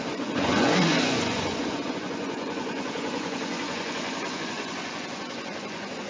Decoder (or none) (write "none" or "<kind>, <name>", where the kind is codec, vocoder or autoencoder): vocoder, Vocos